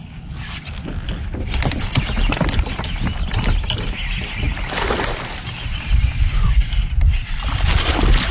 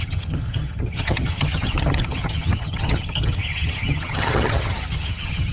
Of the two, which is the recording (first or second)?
first